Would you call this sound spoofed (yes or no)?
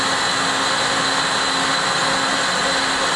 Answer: no